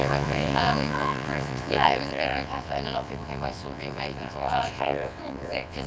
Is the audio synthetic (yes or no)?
yes